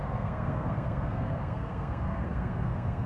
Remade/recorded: remade